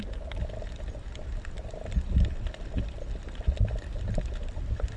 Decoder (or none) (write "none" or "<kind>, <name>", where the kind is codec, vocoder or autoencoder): none